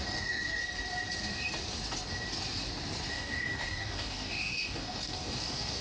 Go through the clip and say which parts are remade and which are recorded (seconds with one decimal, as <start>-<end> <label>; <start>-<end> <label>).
0.0-0.6 remade; 0.6-3.1 recorded; 3.1-5.8 remade